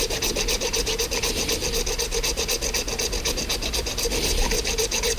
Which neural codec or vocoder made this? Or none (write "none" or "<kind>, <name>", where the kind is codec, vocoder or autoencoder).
none